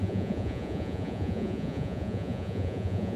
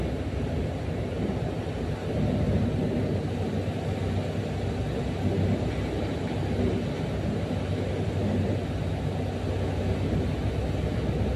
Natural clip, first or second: second